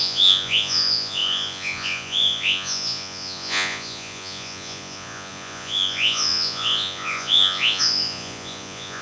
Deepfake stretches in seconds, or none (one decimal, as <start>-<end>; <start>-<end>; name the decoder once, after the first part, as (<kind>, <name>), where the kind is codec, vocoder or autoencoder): 0.0-9.0 (vocoder, Vocos)